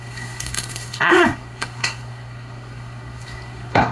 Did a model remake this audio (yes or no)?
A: yes